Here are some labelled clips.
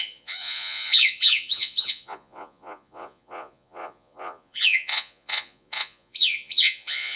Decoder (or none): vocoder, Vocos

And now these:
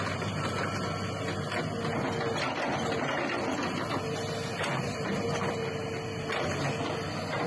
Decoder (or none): none